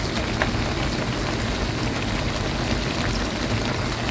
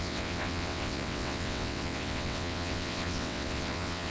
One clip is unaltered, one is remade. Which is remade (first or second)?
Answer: second